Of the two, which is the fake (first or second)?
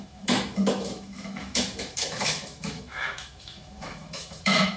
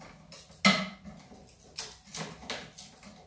first